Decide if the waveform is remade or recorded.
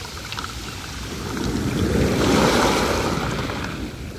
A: recorded